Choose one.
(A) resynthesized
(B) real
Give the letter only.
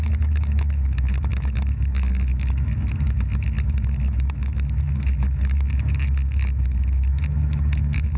A